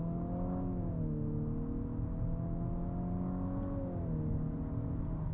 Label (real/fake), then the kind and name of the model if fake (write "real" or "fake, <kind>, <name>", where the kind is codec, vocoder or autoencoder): real